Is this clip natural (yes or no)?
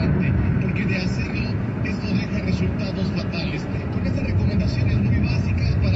yes